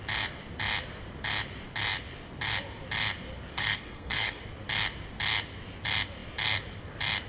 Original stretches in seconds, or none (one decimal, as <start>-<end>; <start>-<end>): 0.0-3.5; 4.4-7.3